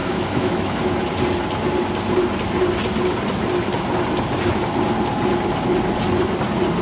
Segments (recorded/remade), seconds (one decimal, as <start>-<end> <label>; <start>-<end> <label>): 0.0-0.8 remade; 0.8-6.8 recorded